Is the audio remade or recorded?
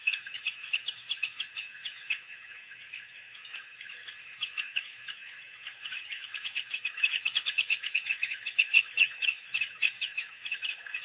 remade